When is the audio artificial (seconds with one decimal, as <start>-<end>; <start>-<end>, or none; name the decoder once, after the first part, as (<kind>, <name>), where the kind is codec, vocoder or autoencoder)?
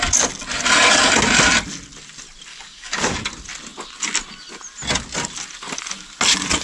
2.5-3.2 (codec, DAC)